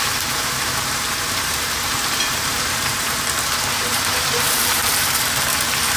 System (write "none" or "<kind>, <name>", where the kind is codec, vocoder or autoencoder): vocoder, BigVGAN v2